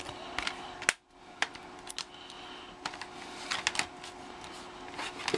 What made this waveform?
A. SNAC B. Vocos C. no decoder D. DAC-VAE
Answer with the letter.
C